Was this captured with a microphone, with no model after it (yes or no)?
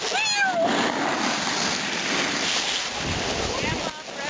yes